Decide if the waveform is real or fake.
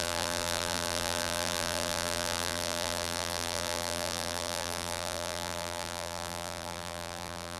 fake